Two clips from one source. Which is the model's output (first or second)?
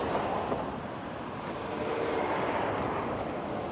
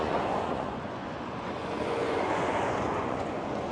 second